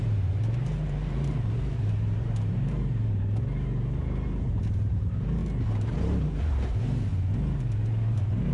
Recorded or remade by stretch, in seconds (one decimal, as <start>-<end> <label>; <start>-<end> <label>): 0.0-5.4 remade; 5.4-6.0 recorded; 6.0-7.1 remade; 7.1-7.6 recorded; 7.6-8.5 remade